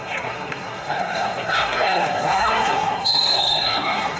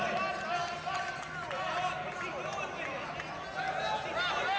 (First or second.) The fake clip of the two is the first